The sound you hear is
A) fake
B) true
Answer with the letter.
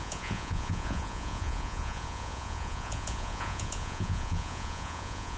A